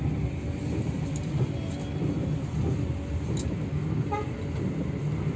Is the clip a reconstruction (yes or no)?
no